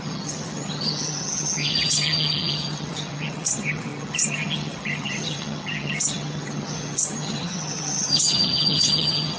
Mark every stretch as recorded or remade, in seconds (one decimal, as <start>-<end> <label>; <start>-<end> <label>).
0.0-9.4 remade